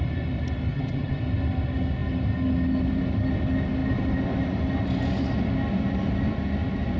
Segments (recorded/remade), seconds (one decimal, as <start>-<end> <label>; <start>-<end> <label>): 0.0-0.7 recorded; 0.7-1.2 remade; 1.2-7.0 recorded